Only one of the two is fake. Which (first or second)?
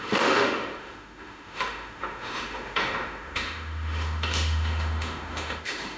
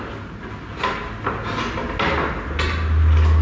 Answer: first